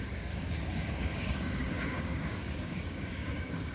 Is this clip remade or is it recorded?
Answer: remade